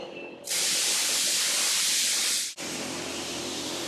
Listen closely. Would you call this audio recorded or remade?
remade